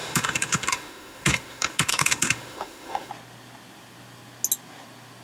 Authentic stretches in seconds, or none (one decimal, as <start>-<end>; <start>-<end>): 3.1-5.2